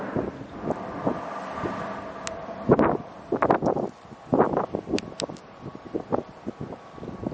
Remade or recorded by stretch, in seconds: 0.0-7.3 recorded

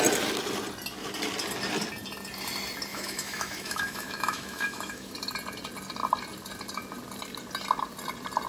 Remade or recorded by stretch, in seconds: 0.0-2.9 recorded; 2.9-5.1 remade; 5.1-8.5 recorded

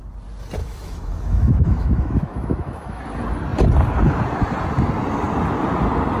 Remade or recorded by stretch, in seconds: 0.0-0.6 recorded; 0.6-3.0 remade; 3.0-6.2 recorded

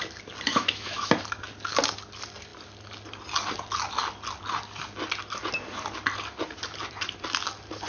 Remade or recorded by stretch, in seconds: 0.0-0.5 recorded; 0.5-1.1 remade; 1.1-7.9 recorded